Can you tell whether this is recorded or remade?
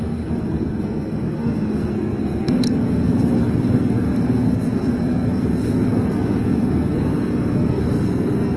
remade